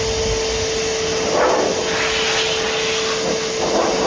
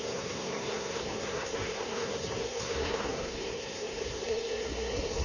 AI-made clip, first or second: second